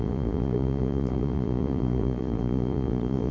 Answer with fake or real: fake